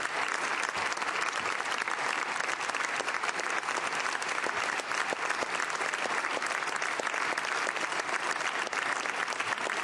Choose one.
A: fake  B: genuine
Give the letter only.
A